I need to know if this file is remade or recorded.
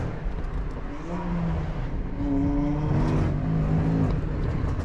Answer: recorded